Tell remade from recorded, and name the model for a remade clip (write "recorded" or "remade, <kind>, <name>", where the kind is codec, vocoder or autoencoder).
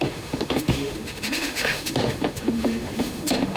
remade, autoencoder, DAC-VAE